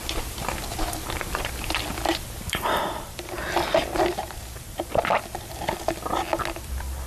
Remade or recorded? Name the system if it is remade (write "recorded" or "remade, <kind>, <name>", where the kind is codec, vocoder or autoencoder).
remade, vocoder, BigVGAN v2